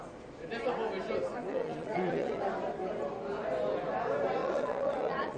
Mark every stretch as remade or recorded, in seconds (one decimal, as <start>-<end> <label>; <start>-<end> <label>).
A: 0.0-1.5 recorded; 1.5-2.4 remade; 2.4-4.4 recorded; 4.4-5.4 remade